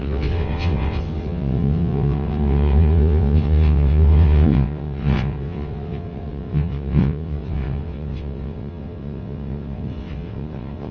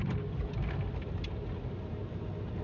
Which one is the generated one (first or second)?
first